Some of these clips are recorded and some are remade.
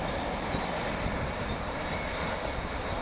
recorded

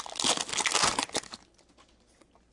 recorded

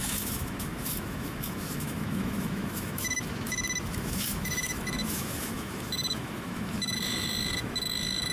remade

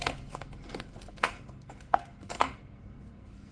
remade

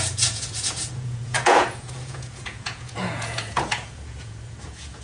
remade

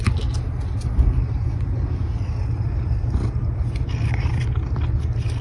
recorded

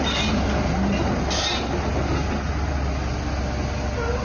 recorded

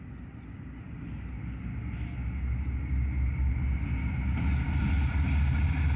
recorded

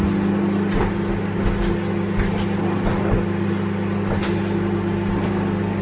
recorded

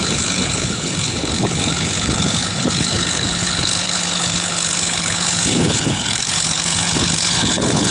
remade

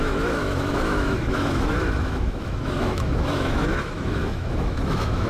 remade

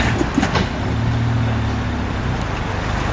recorded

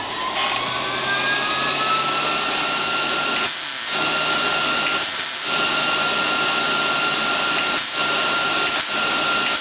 recorded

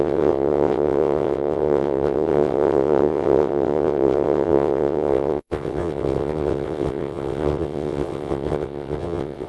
remade